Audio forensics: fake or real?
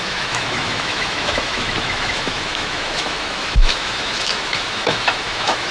fake